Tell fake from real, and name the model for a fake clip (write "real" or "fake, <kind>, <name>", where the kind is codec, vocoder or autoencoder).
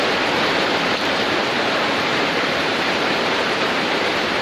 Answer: fake, vocoder, BigVGAN v2